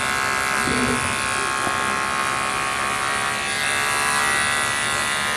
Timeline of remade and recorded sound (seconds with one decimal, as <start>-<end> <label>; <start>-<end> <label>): 0.0-5.4 recorded